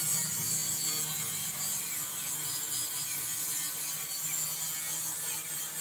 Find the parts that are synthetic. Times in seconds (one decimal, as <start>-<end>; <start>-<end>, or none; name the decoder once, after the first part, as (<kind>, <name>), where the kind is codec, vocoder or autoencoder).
none